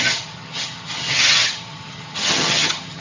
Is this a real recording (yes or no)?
no